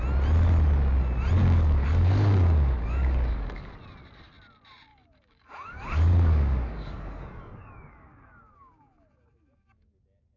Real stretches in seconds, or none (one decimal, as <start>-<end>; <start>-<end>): 0.0-1.4; 3.7-4.9; 10.0-10.4